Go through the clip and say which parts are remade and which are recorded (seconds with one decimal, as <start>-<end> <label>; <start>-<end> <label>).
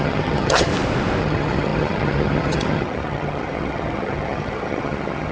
0.0-0.7 remade; 0.7-1.2 recorded; 1.2-5.3 remade